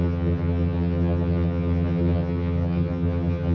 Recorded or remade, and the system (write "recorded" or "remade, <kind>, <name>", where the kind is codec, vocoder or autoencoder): remade, vocoder, HiFi-GAN